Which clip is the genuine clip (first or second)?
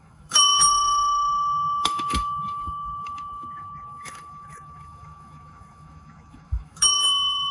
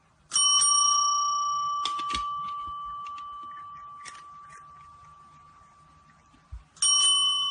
second